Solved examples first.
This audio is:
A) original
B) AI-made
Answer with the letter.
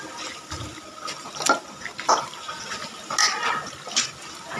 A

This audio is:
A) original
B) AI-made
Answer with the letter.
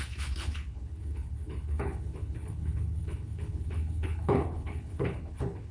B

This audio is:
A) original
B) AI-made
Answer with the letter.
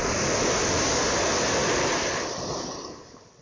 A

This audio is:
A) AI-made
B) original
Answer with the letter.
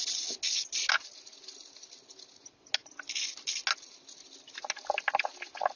B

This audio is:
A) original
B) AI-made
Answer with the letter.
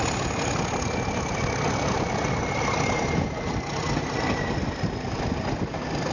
A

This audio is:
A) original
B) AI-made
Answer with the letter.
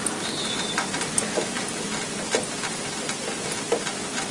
A